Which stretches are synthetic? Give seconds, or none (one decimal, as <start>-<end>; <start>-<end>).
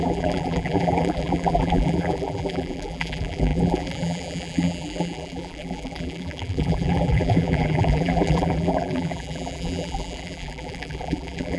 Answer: 0.0-11.6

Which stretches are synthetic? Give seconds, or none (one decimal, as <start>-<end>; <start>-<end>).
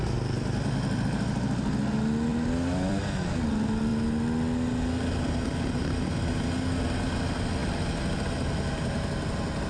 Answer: 2.3-3.3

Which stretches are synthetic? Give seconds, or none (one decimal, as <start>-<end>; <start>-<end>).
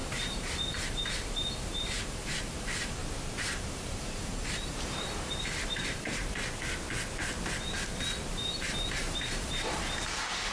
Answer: 0.0-3.0; 3.7-6.2; 8.3-10.5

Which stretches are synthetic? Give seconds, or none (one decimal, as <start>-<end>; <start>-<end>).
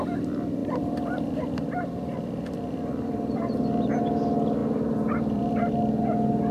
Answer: 0.6-3.9; 4.6-5.7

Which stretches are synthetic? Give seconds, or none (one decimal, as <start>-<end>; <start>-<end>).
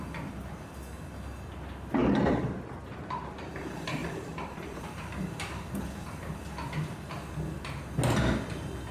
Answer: 2.0-2.6; 4.0-6.5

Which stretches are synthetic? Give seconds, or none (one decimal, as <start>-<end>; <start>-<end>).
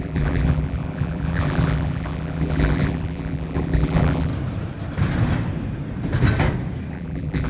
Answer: 0.0-4.3; 6.9-7.5